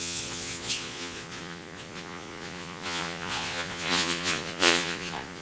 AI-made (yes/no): yes